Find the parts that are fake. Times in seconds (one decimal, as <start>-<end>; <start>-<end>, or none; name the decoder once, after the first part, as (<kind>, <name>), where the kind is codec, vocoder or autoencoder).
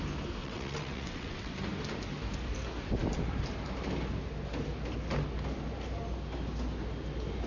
0.4-1.5 (vocoder, WaveNeXt)